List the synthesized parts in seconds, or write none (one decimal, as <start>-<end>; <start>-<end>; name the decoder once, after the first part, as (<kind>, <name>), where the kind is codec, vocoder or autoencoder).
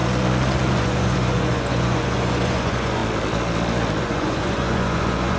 0.7-3.0 (vocoder, Vocos); 4.0-5.4